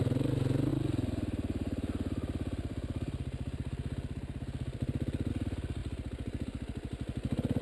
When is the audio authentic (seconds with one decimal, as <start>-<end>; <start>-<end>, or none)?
0.0-0.7; 5.3-5.8